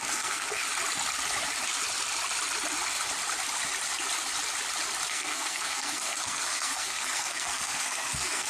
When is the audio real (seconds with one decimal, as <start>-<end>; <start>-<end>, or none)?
0.6-5.1